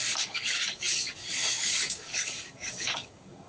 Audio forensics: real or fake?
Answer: fake